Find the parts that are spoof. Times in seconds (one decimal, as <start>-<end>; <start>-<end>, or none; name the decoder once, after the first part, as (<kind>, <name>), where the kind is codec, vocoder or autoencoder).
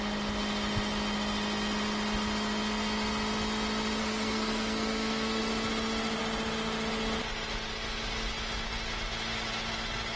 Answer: 4.0-5.4 (codec, SNAC)